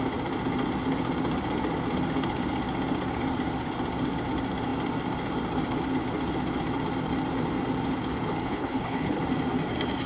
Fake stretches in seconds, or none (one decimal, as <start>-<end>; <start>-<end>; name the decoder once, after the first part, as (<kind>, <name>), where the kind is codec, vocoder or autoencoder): 8.4-9.2 (codec, HILCodec)